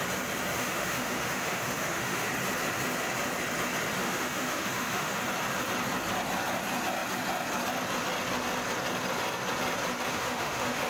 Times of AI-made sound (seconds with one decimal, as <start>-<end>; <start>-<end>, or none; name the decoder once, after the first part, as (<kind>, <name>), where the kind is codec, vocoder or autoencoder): 0.6-2.3 (autoencoder, DAC-VAE); 4.0-5.2; 10.1-10.9